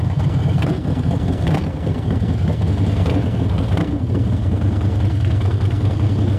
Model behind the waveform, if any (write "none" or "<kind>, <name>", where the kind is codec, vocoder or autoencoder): codec, SNAC